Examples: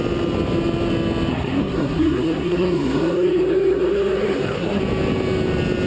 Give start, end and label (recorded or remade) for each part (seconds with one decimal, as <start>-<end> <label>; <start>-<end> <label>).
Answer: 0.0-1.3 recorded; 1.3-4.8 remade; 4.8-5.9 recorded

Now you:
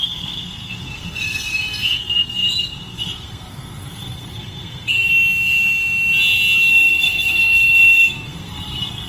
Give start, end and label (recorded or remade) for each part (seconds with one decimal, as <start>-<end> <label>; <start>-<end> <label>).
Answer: 0.0-5.1 remade; 5.1-6.7 recorded; 6.7-9.1 remade

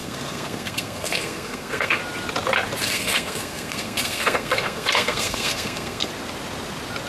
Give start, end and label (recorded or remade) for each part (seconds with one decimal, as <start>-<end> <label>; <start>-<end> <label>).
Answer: 0.0-2.0 remade; 2.0-2.8 recorded; 2.8-6.1 remade; 6.1-7.1 recorded

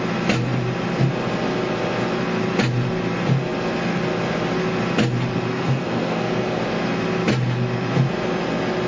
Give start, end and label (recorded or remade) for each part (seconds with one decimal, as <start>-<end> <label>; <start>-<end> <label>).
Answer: 0.0-5.5 recorded; 5.5-6.6 remade; 6.6-8.9 recorded

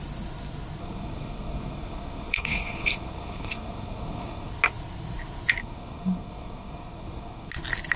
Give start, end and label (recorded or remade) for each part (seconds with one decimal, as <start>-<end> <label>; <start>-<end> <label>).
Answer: 0.0-0.8 recorded; 0.8-4.5 remade; 4.5-5.6 recorded; 5.6-7.5 remade; 7.5-8.0 recorded

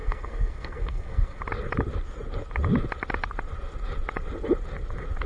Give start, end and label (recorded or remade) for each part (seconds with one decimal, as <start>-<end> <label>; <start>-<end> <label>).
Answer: 0.0-1.4 remade; 1.4-5.3 recorded

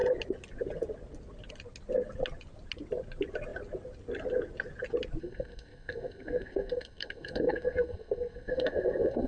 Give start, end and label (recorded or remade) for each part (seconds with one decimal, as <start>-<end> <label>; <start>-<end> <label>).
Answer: 0.0-5.2 recorded; 5.2-9.3 remade

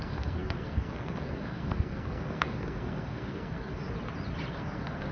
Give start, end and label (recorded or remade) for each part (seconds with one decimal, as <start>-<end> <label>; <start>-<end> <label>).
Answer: 0.0-3.8 remade; 3.8-4.5 recorded; 4.5-5.1 remade